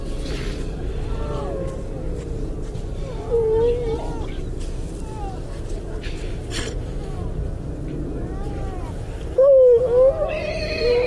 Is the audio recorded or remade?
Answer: recorded